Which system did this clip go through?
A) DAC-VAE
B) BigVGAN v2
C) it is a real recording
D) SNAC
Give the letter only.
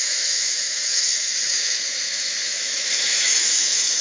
A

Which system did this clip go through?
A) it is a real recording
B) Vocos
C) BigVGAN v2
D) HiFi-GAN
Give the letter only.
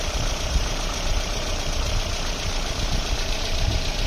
C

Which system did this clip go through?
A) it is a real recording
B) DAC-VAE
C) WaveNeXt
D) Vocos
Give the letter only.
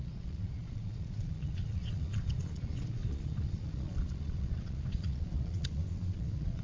D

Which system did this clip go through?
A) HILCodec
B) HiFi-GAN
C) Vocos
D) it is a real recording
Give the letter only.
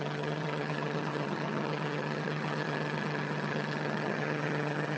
B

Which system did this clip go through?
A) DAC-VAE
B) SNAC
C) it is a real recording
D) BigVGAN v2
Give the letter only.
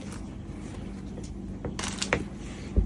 C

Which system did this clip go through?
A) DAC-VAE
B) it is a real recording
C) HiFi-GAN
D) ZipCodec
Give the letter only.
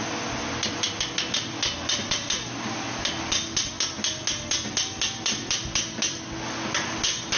B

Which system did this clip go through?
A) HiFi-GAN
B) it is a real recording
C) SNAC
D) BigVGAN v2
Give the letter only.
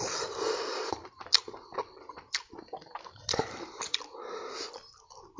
B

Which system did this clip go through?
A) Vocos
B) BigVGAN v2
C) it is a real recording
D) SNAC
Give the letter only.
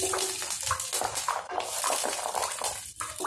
C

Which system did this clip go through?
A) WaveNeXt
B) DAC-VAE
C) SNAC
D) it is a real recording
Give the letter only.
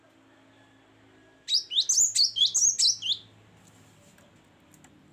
D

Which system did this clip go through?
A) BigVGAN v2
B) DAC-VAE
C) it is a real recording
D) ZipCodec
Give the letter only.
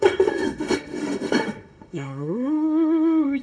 B